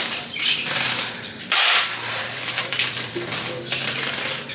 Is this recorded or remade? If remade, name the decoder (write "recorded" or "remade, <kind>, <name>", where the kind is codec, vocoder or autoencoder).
remade, vocoder, BigVGAN v2